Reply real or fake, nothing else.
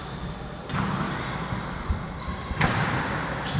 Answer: real